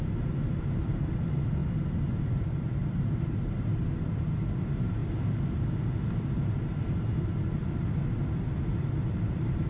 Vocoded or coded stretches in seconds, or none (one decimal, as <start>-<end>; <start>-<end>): 0.0-1.6; 2.1-5.0; 5.5-7.6; 9.0-9.7